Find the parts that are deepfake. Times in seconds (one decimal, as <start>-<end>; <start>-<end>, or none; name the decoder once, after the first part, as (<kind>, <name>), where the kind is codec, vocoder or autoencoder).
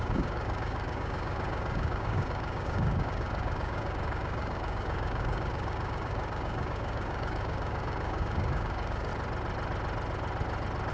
0.0-9.1 (codec, DAC)